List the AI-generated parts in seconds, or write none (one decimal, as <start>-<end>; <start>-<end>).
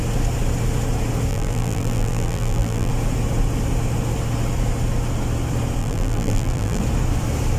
1.3-2.9; 5.8-6.8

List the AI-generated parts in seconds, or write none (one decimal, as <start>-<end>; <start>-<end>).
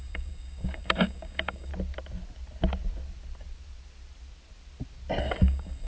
0.0-1.7; 5.2-5.9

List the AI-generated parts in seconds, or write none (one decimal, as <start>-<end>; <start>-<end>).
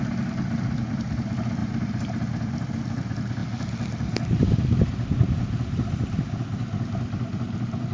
none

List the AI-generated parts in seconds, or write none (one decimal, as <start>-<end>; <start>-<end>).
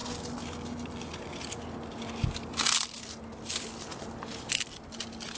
none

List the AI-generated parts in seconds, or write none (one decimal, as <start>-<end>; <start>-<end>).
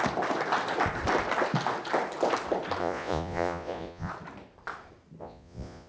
2.8-4.1; 5.2-5.9